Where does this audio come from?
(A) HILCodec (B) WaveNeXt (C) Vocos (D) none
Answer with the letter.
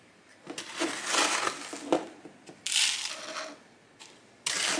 D